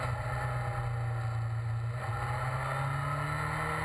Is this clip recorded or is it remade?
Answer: recorded